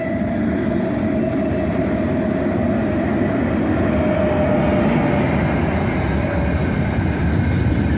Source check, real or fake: real